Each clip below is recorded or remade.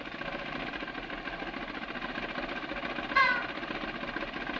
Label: recorded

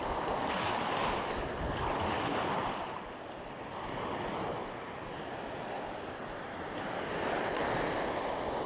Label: recorded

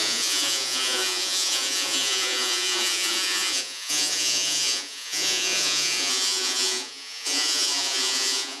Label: remade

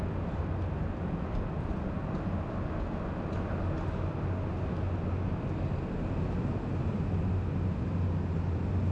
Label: recorded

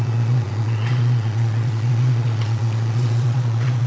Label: remade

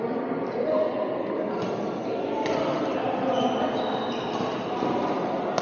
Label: recorded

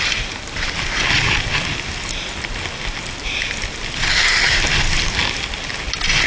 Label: recorded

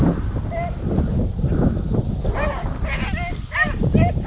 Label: recorded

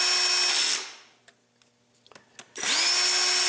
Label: recorded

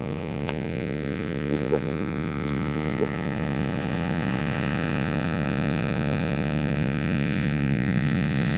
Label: remade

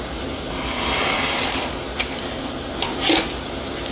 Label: recorded